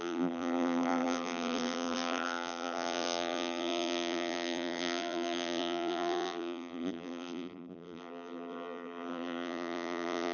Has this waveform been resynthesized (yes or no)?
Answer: yes